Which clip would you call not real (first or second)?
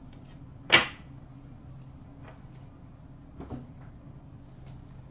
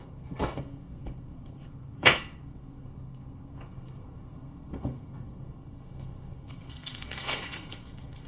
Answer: second